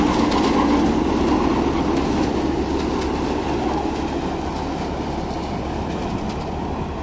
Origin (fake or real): real